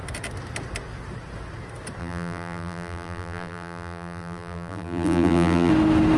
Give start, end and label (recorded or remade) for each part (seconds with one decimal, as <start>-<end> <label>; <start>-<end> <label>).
0.0-2.0 recorded; 2.0-5.7 remade; 5.7-6.2 recorded